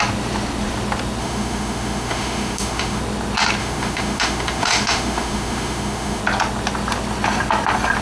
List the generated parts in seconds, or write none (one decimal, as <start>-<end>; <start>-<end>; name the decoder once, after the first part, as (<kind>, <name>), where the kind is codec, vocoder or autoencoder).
1.2-3.0 (autoencoder, DAC-VAE); 3.6-6.2

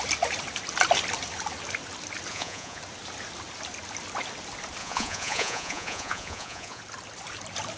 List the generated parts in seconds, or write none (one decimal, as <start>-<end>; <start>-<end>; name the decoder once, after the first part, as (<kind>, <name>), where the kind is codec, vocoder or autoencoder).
2.3-2.8 (vocoder, Vocos); 4.8-6.8